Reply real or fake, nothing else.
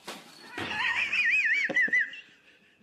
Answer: real